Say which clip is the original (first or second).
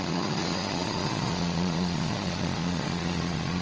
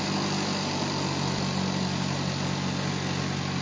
second